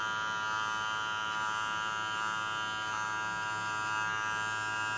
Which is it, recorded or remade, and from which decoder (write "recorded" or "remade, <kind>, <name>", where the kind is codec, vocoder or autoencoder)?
recorded